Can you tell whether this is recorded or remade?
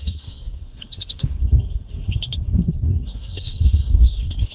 remade